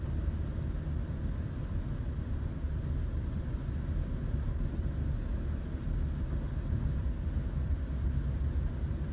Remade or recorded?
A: recorded